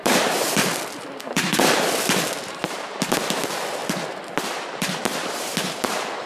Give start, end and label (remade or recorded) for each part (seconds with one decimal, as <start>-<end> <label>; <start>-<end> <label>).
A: 0.0-0.6 remade; 0.6-2.4 recorded; 2.4-3.8 remade; 3.8-5.0 recorded; 5.0-6.3 remade